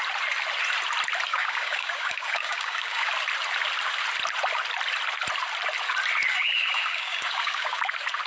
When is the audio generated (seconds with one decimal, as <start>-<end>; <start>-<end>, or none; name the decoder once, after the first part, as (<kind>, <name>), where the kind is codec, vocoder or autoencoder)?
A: 1.3-3.1 (codec, DAC); 6.3-7.8